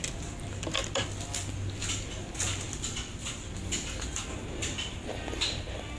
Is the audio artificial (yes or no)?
no